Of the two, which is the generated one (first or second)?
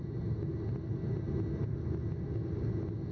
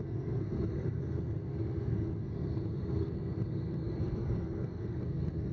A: second